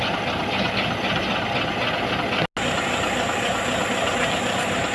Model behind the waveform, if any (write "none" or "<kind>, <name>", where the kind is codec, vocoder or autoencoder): none